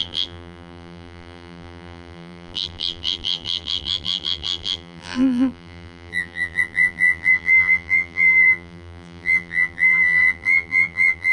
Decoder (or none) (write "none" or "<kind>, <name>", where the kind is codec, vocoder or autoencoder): vocoder, BigVGAN v2